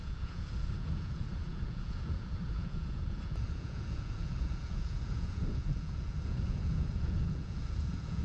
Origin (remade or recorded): remade